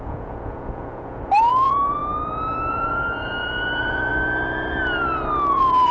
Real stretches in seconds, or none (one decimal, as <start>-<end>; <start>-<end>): 2.0-2.7; 4.1-5.5